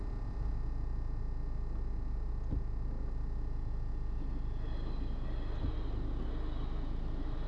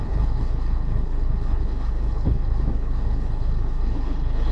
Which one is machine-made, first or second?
second